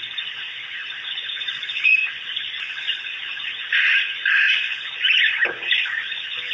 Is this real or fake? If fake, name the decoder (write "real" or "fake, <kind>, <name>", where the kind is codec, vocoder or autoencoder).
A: real